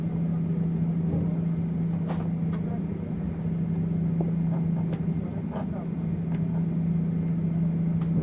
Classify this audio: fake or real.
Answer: real